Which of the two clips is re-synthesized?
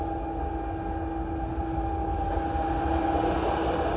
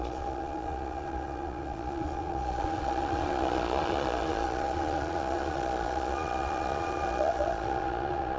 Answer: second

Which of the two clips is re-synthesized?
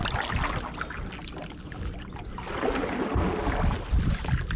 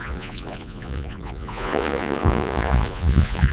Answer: second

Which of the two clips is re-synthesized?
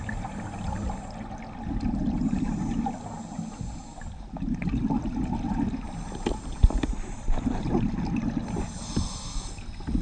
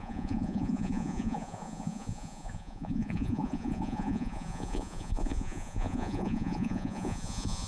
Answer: second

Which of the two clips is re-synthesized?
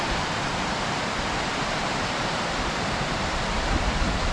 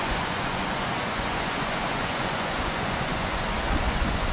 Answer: second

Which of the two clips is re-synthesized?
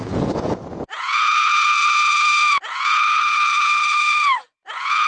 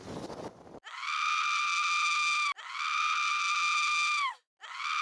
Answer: first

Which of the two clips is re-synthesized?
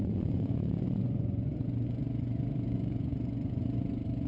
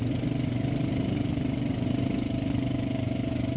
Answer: first